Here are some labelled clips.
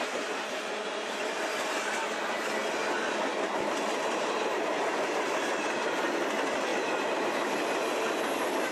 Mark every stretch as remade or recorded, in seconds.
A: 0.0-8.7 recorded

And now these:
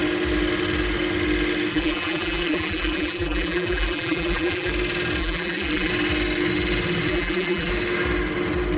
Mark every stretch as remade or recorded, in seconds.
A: 0.0-1.7 recorded; 1.7-4.7 remade; 4.7-5.2 recorded; 5.2-5.9 remade; 5.9-7.1 recorded; 7.1-7.7 remade; 7.7-8.8 recorded

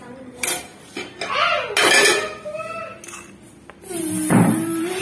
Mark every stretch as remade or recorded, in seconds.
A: 0.0-0.7 remade; 0.7-3.7 recorded; 3.7-5.0 remade

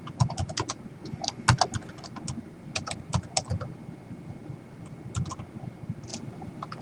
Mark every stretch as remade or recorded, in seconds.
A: 0.0-6.1 recorded; 6.1-6.8 remade

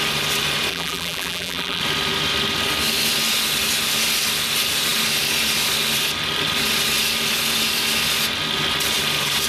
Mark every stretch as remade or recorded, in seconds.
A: 0.0-0.7 recorded; 0.7-1.8 remade; 1.8-9.5 recorded